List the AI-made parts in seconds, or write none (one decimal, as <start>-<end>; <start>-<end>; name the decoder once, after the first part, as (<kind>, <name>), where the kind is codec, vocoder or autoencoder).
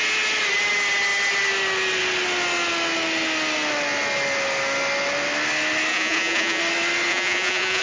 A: 5.9-6.6 (vocoder, Vocos); 7.1-7.8